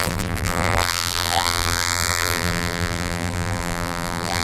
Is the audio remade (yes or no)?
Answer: yes